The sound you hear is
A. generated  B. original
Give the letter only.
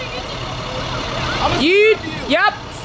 B